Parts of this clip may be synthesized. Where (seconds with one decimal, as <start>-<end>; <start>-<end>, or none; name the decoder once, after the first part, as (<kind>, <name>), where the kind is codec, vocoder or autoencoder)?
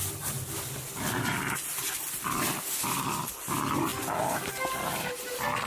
none